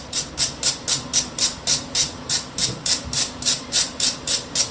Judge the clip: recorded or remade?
recorded